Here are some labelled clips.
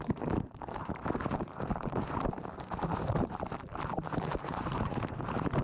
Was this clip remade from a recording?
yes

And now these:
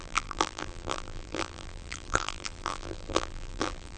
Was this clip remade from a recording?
yes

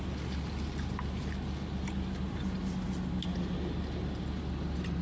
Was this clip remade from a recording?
no